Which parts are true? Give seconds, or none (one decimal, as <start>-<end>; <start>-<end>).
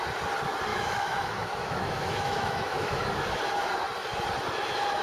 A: 0.0-0.7; 3.0-5.0